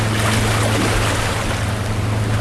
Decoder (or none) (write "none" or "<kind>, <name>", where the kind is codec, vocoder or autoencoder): none